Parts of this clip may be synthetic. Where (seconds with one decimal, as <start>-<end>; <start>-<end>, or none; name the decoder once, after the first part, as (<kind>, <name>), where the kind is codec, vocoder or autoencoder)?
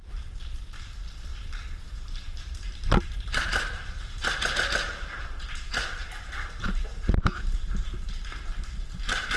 1.3-5.2 (vocoder, BigVGAN v2); 6.0-7.6